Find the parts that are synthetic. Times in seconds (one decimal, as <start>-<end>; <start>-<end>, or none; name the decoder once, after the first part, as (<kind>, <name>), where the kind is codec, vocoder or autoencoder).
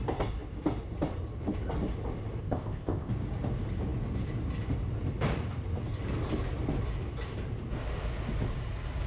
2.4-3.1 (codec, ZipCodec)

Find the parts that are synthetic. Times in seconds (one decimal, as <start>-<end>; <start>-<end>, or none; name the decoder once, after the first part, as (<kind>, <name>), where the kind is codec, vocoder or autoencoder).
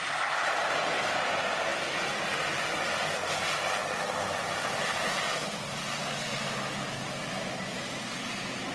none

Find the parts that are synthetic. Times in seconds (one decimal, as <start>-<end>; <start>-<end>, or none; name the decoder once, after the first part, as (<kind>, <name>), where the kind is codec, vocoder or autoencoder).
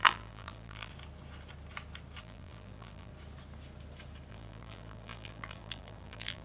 0.0-0.9 (vocoder, BigVGAN v2); 2.2-3.1; 4.3-6.4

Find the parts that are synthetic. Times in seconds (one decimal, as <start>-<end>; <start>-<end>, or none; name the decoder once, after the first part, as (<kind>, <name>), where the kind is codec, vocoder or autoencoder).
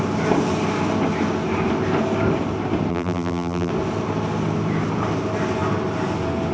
2.9-3.7 (vocoder, BigVGAN v2)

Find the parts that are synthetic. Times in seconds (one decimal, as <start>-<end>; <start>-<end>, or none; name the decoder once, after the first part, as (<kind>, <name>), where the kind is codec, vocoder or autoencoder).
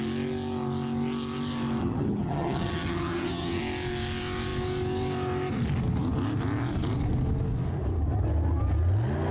1.8-3.6 (vocoder, HiFi-GAN)